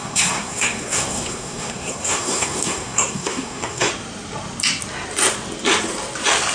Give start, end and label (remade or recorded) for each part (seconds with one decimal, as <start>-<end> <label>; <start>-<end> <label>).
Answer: 0.0-3.9 remade; 3.9-6.5 recorded